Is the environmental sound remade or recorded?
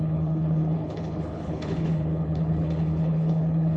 remade